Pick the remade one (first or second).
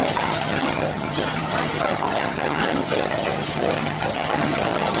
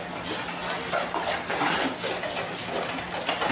first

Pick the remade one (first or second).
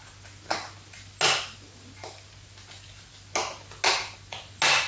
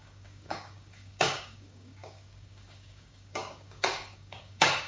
second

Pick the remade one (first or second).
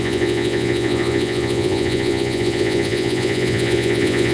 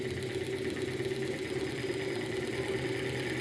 first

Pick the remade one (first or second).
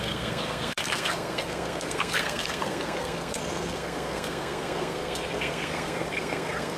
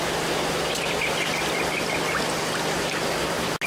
first